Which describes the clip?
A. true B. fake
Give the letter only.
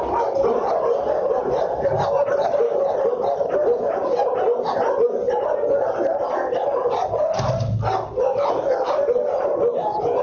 A